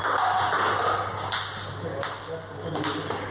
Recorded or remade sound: recorded